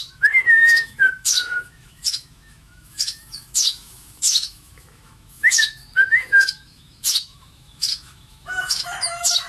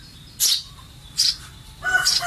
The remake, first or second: first